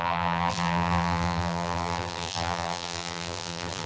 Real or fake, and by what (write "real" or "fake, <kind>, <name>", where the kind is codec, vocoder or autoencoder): fake, vocoder, BigVGAN v2